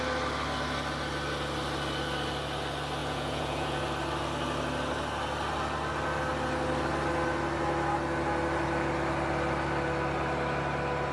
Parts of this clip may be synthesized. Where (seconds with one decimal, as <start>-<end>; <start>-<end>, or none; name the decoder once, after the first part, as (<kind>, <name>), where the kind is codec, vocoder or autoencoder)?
3.0-3.8 (vocoder, Vocos)